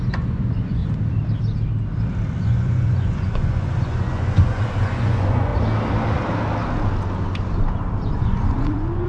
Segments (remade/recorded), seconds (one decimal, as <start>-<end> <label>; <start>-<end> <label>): 0.0-0.8 remade; 0.8-2.4 recorded; 2.4-5.5 remade; 5.5-8.2 recorded; 8.2-9.1 remade